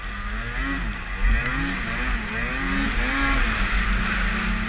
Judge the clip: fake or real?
real